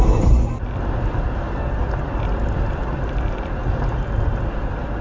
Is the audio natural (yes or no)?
yes